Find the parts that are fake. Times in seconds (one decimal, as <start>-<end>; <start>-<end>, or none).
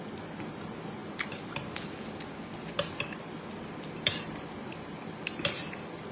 none